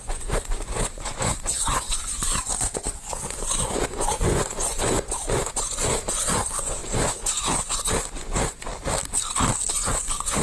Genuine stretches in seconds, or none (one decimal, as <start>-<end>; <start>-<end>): 8.7-9.7